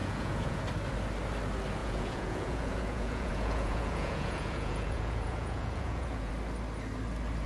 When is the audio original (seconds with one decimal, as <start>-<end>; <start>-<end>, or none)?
0.6-1.8; 6.3-7.5